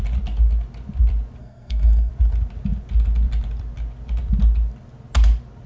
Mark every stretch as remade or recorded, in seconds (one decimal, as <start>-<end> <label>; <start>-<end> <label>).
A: 0.0-1.4 recorded; 1.4-2.1 remade; 2.1-5.7 recorded